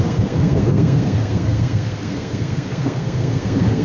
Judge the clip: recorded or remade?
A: remade